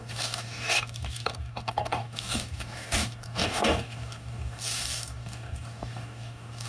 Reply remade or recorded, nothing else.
remade